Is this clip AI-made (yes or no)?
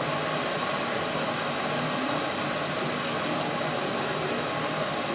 no